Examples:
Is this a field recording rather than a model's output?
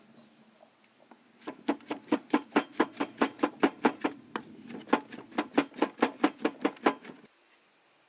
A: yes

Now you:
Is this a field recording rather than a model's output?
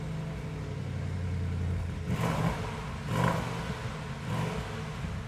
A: yes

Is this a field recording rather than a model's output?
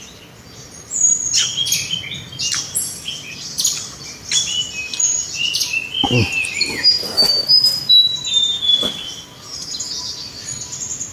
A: yes